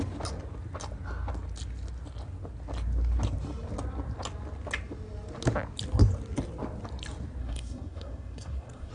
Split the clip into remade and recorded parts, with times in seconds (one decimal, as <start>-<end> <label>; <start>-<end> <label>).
0.0-7.4 recorded; 7.4-8.9 remade